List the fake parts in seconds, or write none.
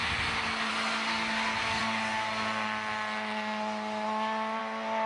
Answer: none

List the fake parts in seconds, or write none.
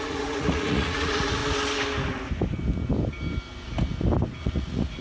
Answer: 0.0-1.4; 4.4-5.0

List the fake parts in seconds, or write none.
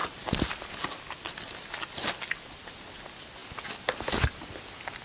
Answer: none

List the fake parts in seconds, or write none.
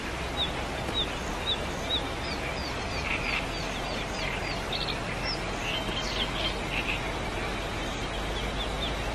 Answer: 2.6-4.1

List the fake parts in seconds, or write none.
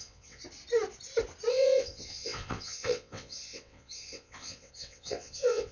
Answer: 0.0-0.4; 1.5-5.7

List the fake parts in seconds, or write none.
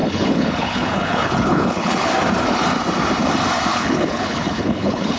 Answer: 0.0-2.1; 3.7-5.2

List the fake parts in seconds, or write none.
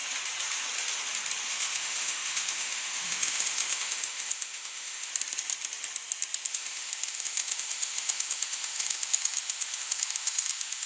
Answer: 1.5-5.1; 6.5-10.9